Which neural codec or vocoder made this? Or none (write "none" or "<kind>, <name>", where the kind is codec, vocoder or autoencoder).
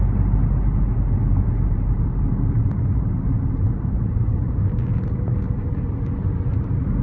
none